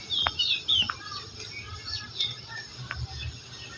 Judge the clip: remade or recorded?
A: recorded